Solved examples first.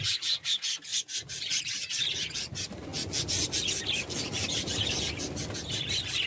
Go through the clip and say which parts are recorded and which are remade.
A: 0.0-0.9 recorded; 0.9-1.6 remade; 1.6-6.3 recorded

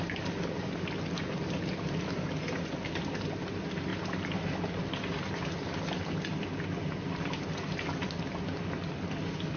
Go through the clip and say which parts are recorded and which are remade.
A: 0.0-9.6 recorded

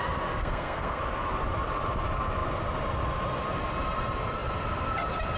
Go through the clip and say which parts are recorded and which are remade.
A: 0.0-0.4 recorded; 0.4-1.0 remade; 1.0-5.4 recorded